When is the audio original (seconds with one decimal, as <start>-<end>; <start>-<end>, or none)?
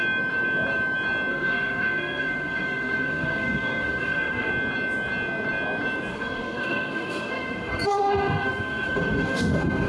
0.0-1.3; 4.5-6.1